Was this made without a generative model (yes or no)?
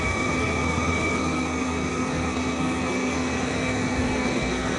no